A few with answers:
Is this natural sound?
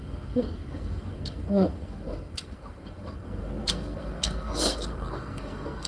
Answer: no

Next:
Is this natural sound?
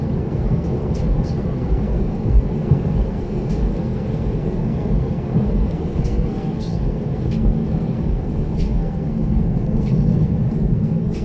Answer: no